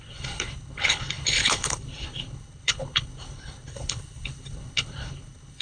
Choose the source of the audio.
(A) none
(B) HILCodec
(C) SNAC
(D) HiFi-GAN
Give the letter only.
B